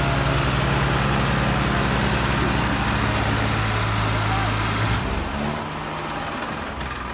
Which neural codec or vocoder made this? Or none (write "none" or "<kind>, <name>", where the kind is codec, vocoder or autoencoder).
none